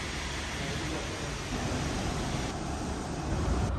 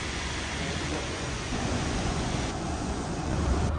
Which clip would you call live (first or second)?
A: first